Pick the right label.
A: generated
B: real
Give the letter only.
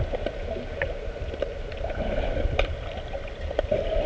B